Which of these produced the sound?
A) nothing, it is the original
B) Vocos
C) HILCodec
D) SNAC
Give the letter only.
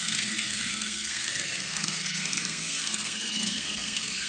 D